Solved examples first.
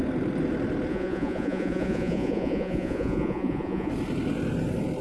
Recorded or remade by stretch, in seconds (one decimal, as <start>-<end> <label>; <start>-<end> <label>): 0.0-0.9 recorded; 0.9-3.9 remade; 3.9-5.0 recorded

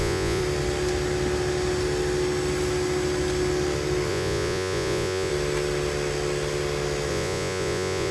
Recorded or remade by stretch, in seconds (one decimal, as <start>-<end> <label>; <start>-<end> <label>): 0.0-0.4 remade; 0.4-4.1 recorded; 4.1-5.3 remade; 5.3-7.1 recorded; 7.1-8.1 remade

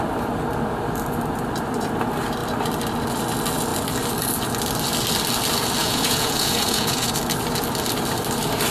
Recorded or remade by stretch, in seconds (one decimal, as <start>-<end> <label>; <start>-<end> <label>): 0.0-5.8 recorded; 5.8-7.1 remade; 7.1-8.7 recorded

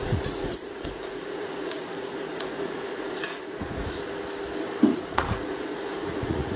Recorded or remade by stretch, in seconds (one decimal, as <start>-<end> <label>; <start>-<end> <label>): 0.0-4.0 remade; 4.0-4.9 recorded; 4.9-6.6 remade